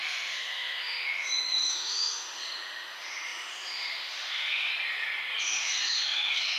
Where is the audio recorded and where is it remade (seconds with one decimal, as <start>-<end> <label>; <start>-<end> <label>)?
0.0-4.7 remade; 4.7-5.4 recorded; 5.4-6.6 remade